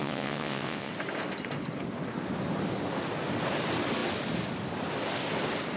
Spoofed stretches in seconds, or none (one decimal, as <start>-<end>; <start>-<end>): 0.0-0.9